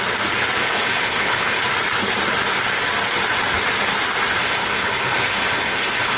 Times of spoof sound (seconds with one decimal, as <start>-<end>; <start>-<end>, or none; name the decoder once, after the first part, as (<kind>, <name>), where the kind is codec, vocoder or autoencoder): 0.6-1.6 (codec, HILCodec); 4.4-6.2

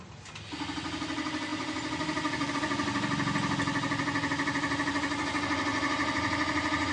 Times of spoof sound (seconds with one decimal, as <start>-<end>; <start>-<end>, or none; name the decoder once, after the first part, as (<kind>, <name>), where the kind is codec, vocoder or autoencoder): none